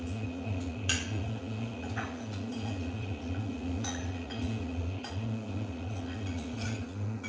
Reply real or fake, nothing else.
fake